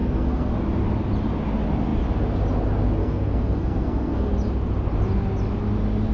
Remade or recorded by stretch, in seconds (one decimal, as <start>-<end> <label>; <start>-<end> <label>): 0.0-0.5 remade; 0.5-3.0 recorded; 3.0-4.3 remade; 4.3-6.1 recorded